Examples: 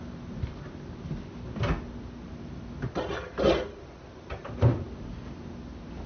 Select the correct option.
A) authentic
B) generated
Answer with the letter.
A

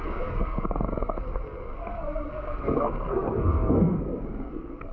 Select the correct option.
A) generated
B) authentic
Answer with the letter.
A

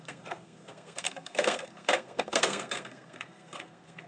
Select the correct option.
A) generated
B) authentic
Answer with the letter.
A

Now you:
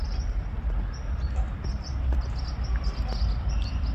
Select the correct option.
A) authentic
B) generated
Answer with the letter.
A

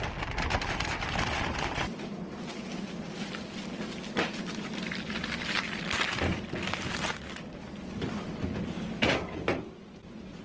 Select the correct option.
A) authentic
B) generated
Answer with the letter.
A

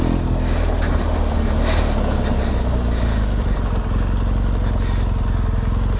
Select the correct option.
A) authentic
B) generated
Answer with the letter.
A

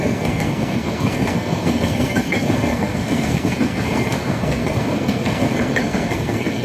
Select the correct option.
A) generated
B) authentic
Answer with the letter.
A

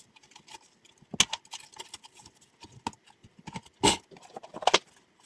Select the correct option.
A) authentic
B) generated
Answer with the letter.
A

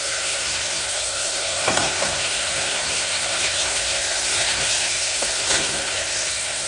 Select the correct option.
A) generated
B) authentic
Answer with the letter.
A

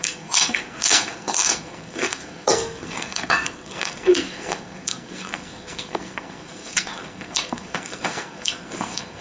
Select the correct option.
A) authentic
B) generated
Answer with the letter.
B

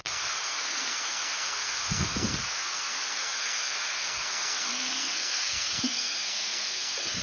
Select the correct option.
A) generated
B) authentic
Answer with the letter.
A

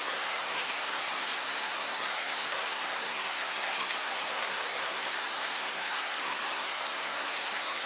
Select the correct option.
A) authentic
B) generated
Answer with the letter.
B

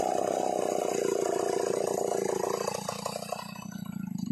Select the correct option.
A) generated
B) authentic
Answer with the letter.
B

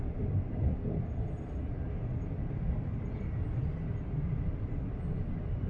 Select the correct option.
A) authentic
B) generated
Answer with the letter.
A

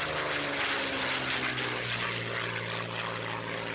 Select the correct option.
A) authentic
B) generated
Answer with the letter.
A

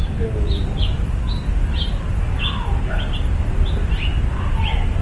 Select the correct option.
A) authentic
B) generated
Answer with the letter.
A